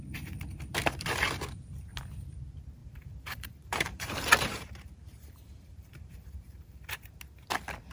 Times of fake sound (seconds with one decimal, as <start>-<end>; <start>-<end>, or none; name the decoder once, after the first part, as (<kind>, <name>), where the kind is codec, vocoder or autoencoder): 2.8-7.1 (vocoder, BigVGAN v2)